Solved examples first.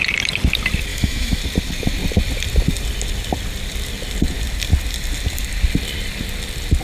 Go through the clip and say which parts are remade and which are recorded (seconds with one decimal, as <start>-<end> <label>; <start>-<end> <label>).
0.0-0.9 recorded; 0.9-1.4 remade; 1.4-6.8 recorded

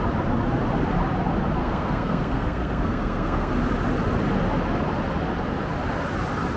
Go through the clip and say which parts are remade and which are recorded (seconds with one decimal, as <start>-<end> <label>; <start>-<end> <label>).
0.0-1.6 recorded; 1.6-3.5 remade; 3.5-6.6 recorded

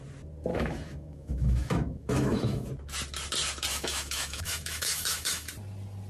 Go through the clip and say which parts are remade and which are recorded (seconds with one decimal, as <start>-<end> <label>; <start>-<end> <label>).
0.0-0.5 recorded; 0.5-2.7 remade; 2.7-3.7 recorded; 3.7-5.5 remade; 5.5-6.1 recorded